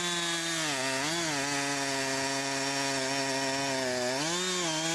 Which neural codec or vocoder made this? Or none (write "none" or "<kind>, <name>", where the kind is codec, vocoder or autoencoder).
none